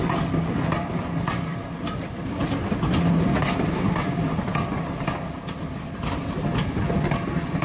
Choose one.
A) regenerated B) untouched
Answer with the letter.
B